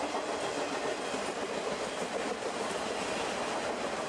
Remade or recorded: recorded